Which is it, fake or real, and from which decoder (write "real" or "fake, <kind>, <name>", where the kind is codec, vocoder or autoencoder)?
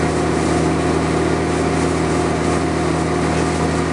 real